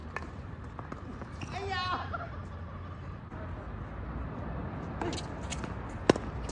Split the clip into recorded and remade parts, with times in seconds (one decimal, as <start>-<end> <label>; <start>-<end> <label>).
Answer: 0.0-6.5 recorded